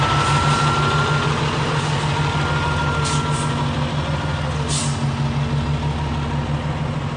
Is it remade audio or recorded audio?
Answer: recorded